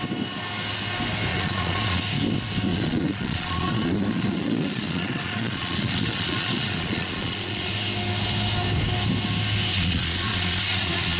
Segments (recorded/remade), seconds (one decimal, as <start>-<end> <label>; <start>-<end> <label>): 0.0-1.3 recorded; 1.3-2.0 remade; 2.0-2.7 recorded; 2.7-7.7 remade; 7.7-9.7 recorded; 9.7-11.2 remade